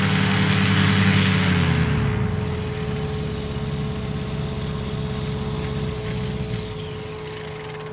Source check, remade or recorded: recorded